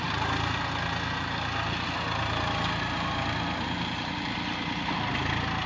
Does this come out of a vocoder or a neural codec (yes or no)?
no